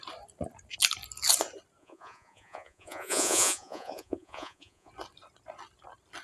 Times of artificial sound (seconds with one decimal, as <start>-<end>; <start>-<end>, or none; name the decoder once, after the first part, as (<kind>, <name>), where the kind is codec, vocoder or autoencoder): 1.8-4.9 (vocoder, Vocos)